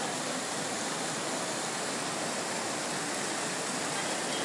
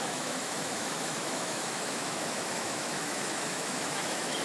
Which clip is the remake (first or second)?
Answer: second